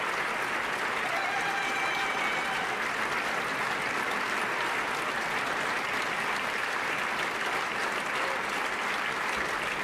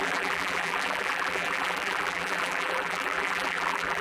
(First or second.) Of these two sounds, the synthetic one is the second